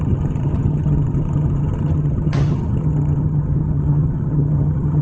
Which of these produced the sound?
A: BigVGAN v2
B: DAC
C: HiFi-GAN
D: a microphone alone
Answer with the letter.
C